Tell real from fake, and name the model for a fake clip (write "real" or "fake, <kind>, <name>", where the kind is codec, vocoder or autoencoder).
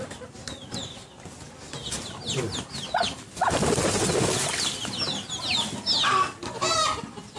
real